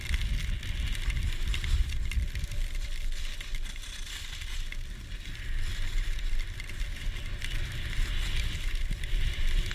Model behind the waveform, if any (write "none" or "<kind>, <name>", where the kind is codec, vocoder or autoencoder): none